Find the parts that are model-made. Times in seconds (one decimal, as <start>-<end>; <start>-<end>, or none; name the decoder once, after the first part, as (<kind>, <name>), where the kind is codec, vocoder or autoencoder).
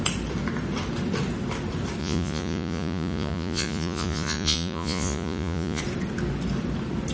2.0-5.8 (vocoder, Vocos)